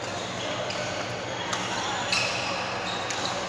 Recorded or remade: recorded